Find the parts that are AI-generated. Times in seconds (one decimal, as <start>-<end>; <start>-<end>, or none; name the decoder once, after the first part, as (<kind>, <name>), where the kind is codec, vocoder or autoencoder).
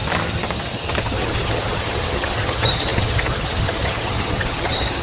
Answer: 1.0-5.0 (vocoder, HiFi-GAN)